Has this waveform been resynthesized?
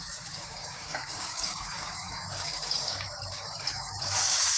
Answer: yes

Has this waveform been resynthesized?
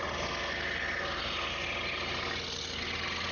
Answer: no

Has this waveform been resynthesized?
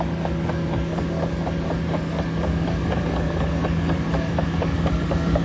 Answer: yes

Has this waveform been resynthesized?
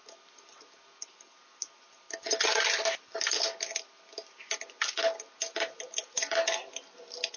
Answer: no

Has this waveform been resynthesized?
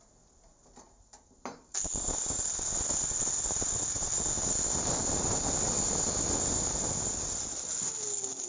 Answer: no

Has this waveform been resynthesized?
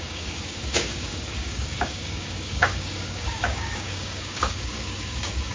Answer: yes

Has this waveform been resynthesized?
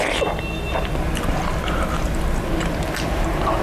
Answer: no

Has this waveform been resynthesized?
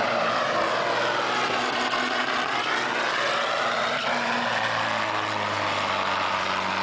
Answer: no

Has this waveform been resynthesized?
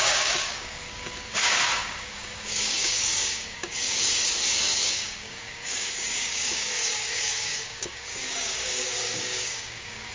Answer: yes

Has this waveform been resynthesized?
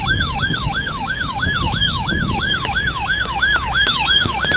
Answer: yes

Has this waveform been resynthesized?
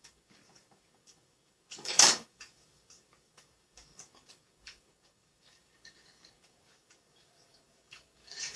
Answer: yes